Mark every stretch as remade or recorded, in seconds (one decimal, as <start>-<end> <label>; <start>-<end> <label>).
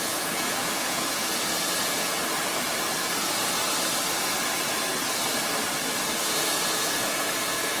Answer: 0.0-1.2 remade; 1.2-1.8 recorded; 1.8-2.2 remade; 2.2-6.2 recorded; 6.2-7.8 remade